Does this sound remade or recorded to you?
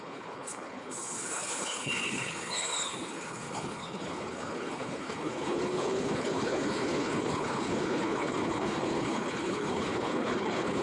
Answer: remade